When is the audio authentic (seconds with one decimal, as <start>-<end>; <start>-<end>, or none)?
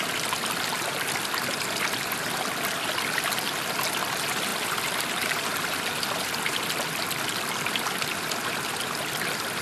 0.0-9.6